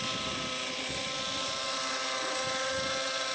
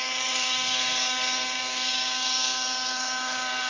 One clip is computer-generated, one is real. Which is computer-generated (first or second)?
second